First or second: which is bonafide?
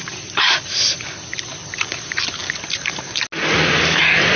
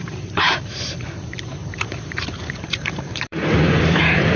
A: first